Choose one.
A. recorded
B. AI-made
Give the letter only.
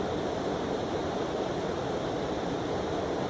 A